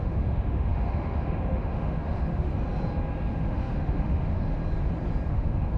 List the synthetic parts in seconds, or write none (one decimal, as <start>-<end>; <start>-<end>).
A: 0.0-2.5; 3.3-4.6; 5.3-5.8